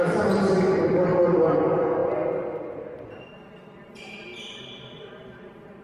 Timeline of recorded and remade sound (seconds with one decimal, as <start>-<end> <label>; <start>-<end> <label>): 0.0-5.8 recorded